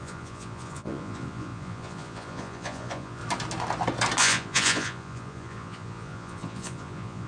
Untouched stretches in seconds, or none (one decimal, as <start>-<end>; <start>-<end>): 3.2-4.2